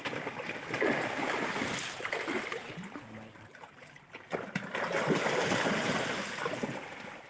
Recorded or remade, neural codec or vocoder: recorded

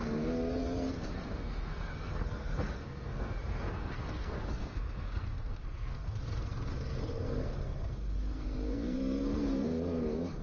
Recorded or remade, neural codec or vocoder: remade, codec, SNAC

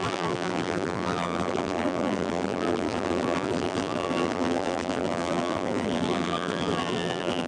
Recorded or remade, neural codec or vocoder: remade, vocoder, BigVGAN v2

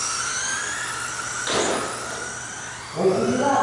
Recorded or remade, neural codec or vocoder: recorded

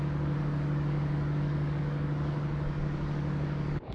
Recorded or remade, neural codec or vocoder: remade, codec, DAC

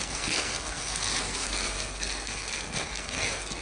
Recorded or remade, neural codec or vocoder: remade, codec, SNAC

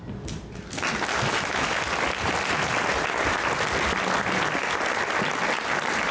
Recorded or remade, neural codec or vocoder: recorded